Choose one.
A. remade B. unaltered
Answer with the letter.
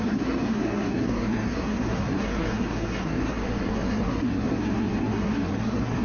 A